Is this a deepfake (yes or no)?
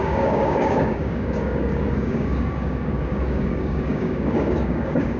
yes